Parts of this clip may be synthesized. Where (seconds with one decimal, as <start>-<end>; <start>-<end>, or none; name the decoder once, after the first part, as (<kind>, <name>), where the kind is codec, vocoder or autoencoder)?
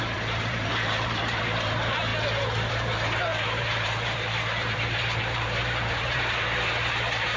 0.0-2.1 (vocoder, BigVGAN v2); 2.7-7.4